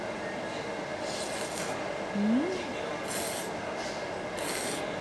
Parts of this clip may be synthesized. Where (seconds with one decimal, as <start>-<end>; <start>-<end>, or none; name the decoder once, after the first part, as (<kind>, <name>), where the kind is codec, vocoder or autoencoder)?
none